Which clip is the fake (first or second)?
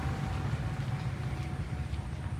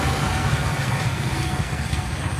second